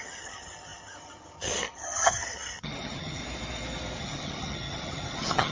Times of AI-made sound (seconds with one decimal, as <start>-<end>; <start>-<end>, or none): 0.0-3.2; 4.0-5.5